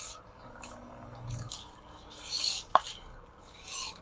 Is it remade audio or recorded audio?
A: remade